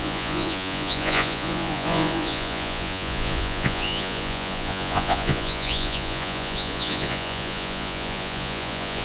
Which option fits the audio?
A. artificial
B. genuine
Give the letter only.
A